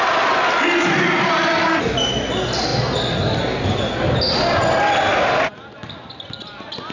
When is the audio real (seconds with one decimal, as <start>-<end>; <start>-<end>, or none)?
0.0-6.9